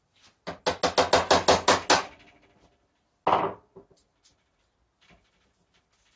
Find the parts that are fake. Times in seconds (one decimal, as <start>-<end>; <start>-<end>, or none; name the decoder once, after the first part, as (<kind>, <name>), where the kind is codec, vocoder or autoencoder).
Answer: none